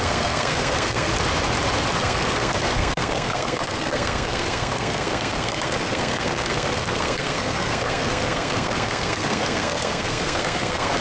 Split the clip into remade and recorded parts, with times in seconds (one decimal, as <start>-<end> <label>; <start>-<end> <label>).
0.0-1.1 remade; 1.1-2.0 recorded; 2.0-11.0 remade

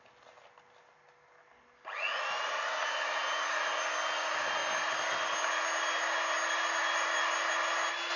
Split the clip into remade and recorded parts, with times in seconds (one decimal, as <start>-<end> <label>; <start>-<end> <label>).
0.0-8.2 recorded

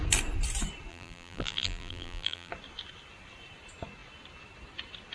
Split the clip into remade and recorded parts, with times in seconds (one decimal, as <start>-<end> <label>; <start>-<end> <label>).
0.0-0.9 recorded; 0.9-2.5 remade; 2.5-5.1 recorded

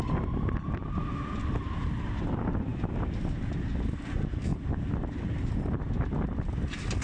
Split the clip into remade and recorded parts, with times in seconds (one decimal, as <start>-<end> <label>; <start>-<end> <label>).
0.0-7.0 recorded

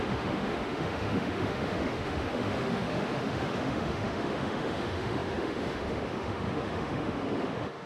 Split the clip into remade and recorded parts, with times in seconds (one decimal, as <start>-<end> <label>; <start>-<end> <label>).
0.0-7.9 remade

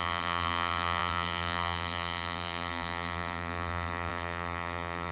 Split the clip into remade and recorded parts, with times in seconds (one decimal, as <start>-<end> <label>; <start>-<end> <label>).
0.0-5.1 remade

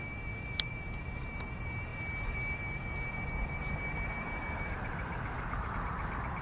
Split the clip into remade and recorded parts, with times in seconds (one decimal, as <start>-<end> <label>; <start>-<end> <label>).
0.0-6.4 recorded

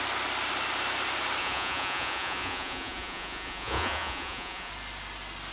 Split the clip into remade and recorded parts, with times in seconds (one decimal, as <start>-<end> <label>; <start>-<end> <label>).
0.0-1.4 recorded; 1.4-4.7 remade; 4.7-5.5 recorded